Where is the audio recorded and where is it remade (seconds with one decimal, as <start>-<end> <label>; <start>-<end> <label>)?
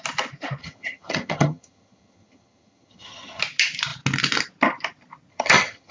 0.0-0.6 recorded; 0.6-3.4 remade; 3.4-5.3 recorded; 5.3-5.9 remade